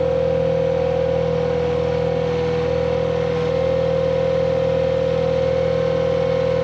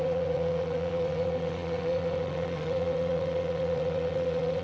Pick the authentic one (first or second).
first